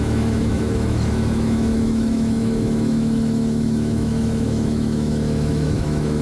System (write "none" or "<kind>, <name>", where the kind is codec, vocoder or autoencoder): autoencoder, DAC-VAE